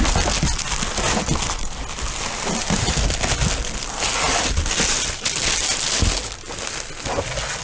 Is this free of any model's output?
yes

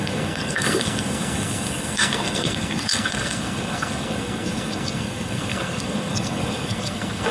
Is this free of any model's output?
no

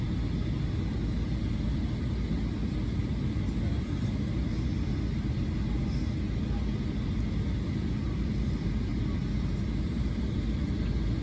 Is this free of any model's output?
yes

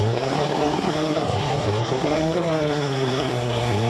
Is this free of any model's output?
no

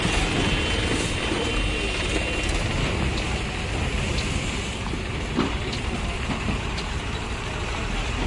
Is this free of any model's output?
yes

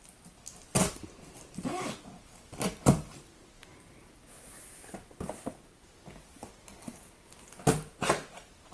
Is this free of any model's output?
yes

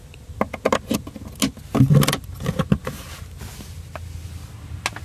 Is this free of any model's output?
yes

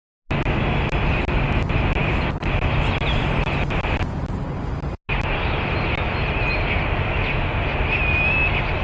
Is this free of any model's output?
yes